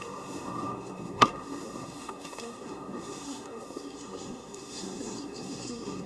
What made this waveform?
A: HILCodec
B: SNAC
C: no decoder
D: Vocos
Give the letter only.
B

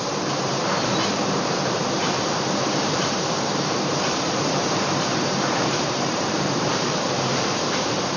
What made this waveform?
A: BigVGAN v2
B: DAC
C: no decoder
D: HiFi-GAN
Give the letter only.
A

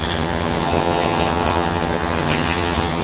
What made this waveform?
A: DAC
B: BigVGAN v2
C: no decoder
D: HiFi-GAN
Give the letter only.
D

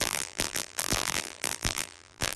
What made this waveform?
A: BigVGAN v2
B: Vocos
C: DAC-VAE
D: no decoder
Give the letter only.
A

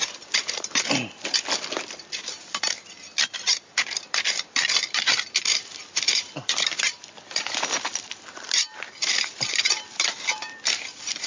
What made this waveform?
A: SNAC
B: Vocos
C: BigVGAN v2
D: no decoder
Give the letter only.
C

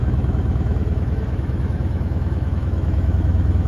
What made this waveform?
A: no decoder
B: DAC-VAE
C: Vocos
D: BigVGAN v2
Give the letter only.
B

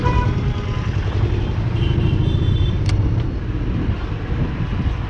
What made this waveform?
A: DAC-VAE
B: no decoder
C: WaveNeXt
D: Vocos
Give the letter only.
B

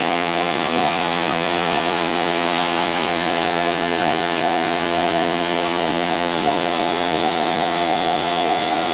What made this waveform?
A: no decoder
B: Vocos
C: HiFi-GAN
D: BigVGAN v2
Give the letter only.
B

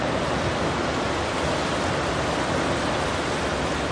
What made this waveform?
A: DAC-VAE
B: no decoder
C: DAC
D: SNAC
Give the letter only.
B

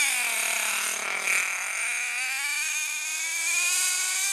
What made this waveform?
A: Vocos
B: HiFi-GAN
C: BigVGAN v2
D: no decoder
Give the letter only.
D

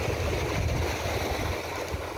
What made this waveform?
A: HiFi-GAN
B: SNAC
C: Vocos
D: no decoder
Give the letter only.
D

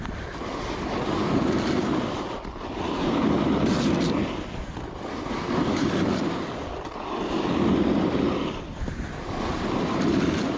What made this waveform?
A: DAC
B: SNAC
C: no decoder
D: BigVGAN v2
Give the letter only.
D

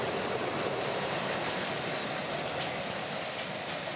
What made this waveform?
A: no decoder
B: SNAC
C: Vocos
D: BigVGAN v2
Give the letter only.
A